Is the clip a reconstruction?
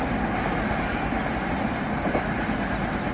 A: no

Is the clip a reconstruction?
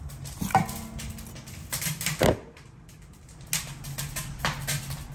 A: no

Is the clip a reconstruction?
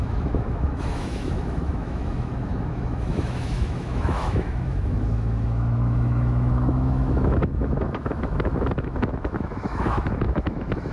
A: yes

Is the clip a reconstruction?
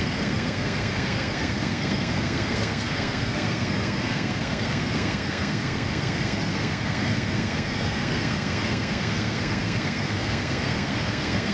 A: yes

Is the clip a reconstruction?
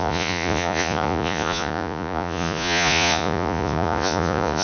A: yes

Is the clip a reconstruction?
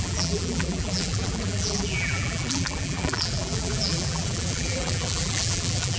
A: yes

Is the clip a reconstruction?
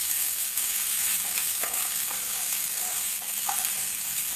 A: yes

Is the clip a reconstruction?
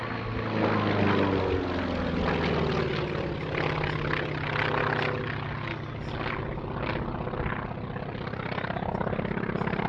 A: no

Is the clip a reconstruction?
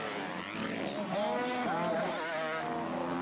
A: no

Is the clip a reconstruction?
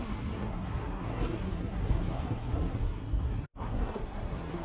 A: yes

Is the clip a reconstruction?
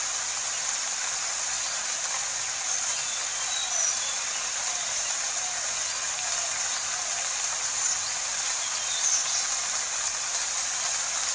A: no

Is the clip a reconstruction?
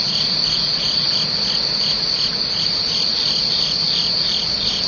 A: no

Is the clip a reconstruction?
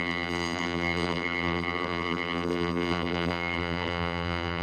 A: yes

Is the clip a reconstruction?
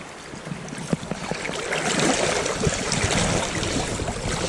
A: no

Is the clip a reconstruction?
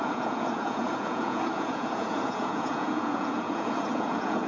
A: yes